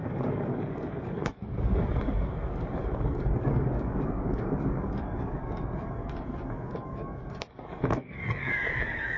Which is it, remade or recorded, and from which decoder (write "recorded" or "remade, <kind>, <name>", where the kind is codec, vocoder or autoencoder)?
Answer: remade, codec, DAC